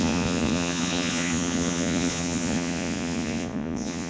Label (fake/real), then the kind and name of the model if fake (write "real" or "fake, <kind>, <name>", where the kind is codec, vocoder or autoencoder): fake, vocoder, Vocos